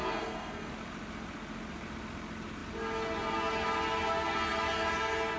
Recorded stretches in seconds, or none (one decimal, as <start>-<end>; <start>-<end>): 0.7-5.4